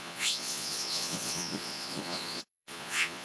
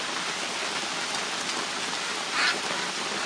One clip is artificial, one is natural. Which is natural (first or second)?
second